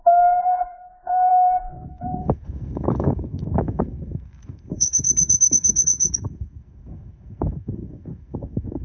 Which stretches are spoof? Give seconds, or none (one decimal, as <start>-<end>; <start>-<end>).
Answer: 0.0-8.8